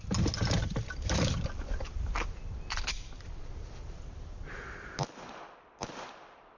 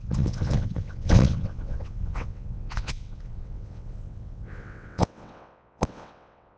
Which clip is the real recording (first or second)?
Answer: first